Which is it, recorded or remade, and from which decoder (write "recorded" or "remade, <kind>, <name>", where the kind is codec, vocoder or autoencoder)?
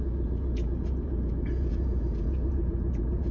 remade, vocoder, Vocos